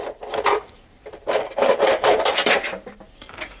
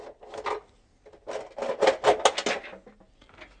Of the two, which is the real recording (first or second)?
second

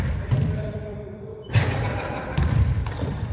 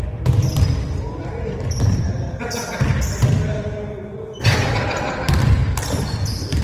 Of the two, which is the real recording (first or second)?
second